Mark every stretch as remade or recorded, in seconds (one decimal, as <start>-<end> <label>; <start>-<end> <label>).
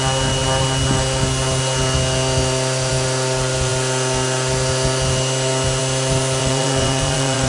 0.0-6.4 recorded; 6.4-7.5 remade